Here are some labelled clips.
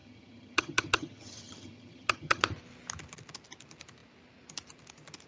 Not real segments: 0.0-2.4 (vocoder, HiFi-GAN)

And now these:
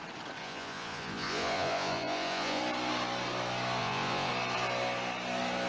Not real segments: 0.4-2.6 (vocoder, Vocos); 3.8-4.3

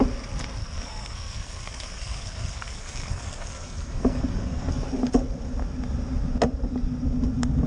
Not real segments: 0.6-4.7 (codec, SNAC)

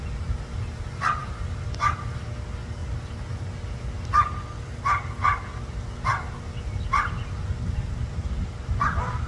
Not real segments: none

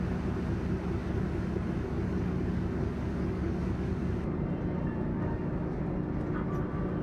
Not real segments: 1.0-4.3 (codec, DAC); 5.1-5.8

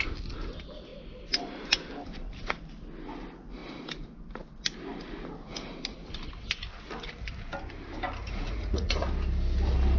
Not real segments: 8.2-9.1 (vocoder, Vocos)

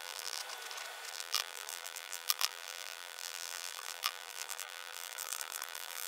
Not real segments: 0.0-0.4 (vocoder, BigVGAN v2); 1.1-6.1

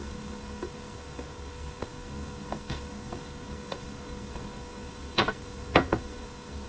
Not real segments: 0.0-6.7 (codec, SNAC)